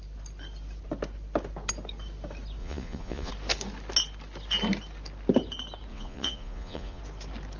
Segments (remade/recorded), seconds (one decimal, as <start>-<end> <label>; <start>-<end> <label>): 0.0-2.6 recorded; 2.6-3.3 remade; 3.3-5.9 recorded; 5.9-7.0 remade; 7.0-7.6 recorded